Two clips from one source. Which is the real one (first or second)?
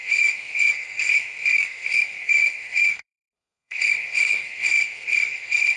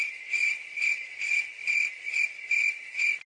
second